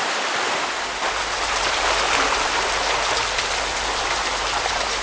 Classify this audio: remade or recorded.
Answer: recorded